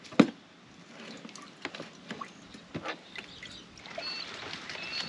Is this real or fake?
real